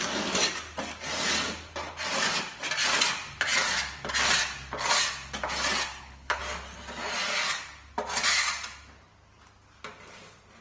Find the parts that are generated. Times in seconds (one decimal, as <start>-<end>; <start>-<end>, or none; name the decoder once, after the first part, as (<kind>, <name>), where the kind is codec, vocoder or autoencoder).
5.9-6.4 (codec, HILCodec)